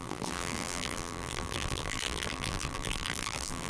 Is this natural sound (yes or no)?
no